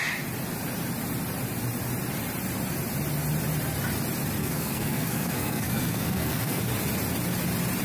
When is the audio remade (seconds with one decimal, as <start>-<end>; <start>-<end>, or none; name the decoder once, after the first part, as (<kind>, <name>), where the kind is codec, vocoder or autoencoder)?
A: 4.4-6.6 (codec, SNAC)